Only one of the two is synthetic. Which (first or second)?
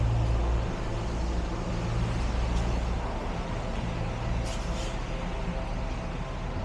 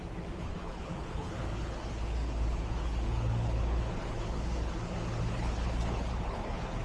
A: second